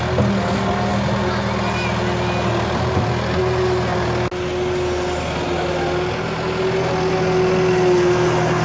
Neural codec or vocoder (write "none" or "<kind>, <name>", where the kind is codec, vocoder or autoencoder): none